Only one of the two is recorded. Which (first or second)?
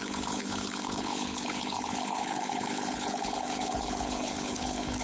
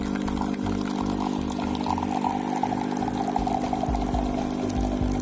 second